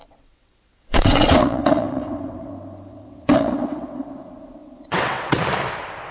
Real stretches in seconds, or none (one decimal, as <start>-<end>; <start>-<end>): 2.5-2.9; 4.1-4.6; 5.4-6.1